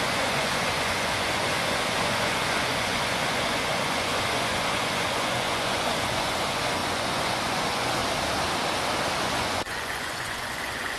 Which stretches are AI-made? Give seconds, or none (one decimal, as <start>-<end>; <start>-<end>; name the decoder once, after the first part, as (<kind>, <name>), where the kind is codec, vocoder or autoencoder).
0.0-8.0 (vocoder, Vocos); 9.2-11.0